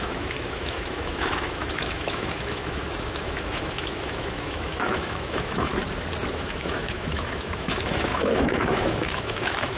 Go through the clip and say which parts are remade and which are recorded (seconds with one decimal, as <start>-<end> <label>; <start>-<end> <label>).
0.0-5.7 remade; 5.7-6.3 recorded; 6.3-9.8 remade